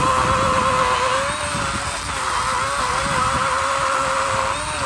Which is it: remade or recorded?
recorded